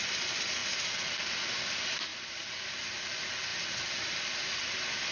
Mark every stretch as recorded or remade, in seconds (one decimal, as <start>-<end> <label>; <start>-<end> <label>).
0.0-2.1 recorded; 2.1-3.0 remade; 3.0-5.1 recorded